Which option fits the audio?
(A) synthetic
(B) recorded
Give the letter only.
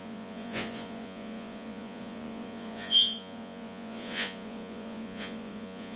A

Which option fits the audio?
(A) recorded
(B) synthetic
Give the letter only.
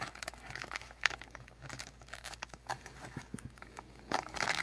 B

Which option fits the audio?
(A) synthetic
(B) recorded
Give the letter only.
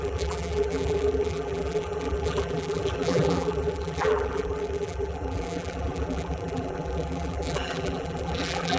A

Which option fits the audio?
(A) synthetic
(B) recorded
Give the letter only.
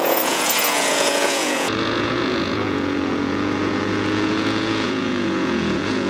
A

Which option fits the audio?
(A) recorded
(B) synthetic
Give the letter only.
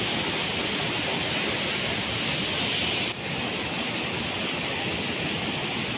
A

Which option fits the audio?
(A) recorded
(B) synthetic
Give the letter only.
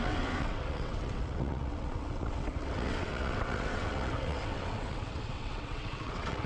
B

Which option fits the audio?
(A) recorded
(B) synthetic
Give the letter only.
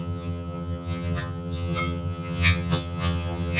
B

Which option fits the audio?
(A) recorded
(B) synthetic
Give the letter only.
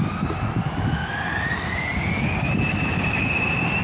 A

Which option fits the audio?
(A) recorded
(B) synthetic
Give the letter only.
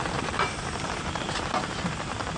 B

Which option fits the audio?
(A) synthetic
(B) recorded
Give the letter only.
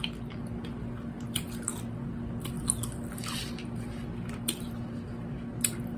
B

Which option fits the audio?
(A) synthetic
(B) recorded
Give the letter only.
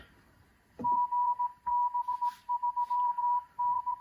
A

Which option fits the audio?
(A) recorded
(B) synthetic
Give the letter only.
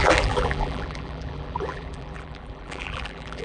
B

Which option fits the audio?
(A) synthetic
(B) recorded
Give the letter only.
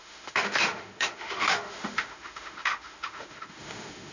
A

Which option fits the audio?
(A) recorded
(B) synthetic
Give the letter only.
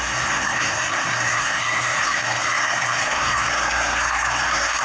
B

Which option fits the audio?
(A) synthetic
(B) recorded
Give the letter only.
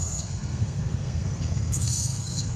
A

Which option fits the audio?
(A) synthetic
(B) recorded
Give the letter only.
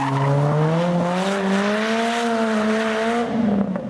B